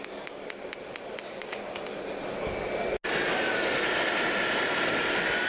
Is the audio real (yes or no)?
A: yes